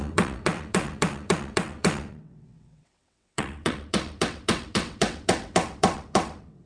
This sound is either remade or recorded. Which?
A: remade